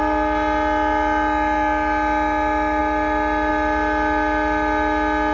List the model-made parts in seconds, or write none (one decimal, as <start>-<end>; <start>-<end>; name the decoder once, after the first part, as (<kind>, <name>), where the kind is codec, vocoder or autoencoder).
none